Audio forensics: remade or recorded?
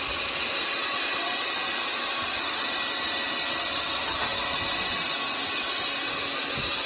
recorded